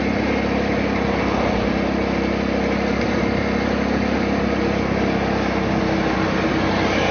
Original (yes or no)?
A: yes